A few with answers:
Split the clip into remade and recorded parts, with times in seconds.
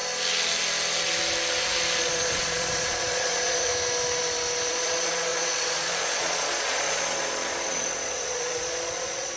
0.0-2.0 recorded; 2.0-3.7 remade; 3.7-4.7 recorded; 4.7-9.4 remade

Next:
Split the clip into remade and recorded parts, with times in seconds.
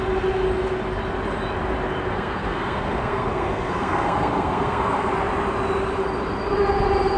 0.0-2.0 recorded; 2.0-5.1 remade; 5.1-7.2 recorded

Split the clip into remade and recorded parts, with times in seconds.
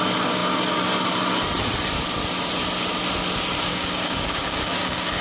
0.0-3.7 recorded; 3.7-5.2 remade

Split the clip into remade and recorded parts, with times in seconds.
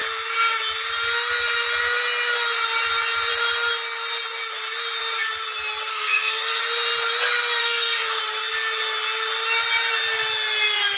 0.0-5.9 recorded; 5.9-6.6 remade; 6.6-7.6 recorded; 7.6-8.2 remade; 8.2-11.0 recorded